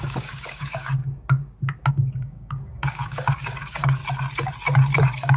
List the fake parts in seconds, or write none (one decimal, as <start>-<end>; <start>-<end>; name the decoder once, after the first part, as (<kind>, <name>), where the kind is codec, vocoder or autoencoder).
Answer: 0.0-1.0 (codec, DAC); 1.9-4.0; 5.0-5.4